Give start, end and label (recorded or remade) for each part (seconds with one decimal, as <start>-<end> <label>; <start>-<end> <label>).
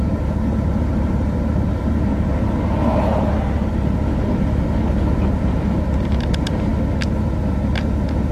0.0-2.1 remade; 2.1-5.0 recorded; 5.0-6.7 remade; 6.7-8.3 recorded